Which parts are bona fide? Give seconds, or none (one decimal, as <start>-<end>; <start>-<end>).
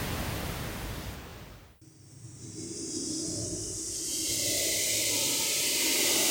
0.0-4.1; 4.7-6.3